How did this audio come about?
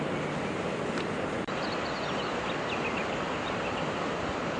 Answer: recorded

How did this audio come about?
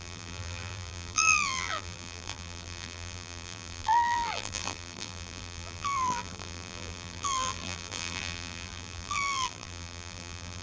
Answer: remade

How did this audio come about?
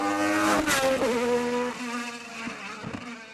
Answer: recorded